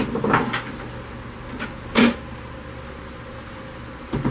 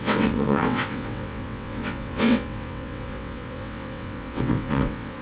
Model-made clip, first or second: second